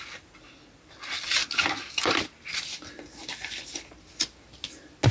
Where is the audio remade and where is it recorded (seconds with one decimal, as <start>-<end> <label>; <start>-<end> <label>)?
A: 0.0-5.1 recorded